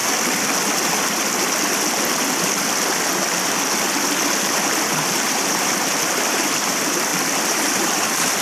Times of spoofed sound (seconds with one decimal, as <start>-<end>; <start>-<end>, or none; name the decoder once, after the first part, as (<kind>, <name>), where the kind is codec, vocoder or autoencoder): 3.9-8.4 (vocoder, BigVGAN v2)